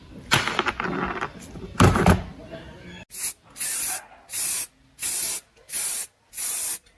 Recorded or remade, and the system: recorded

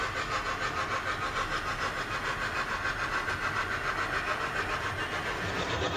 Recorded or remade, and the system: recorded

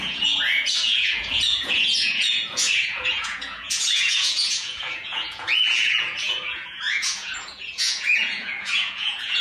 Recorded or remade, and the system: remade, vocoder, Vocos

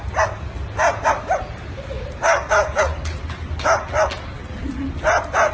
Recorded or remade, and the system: recorded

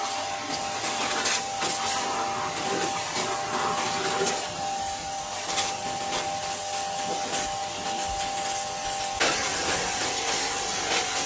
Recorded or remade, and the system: recorded